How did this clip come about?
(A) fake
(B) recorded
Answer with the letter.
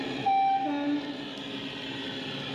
B